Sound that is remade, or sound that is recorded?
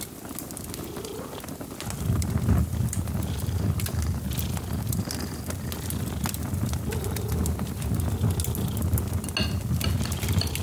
recorded